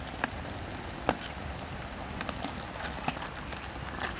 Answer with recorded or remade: recorded